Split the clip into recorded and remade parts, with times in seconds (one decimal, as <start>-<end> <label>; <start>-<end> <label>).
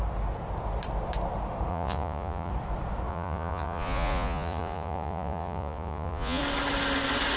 0.0-1.7 recorded; 1.7-2.5 remade; 2.5-3.1 recorded; 3.1-6.4 remade; 6.4-7.4 recorded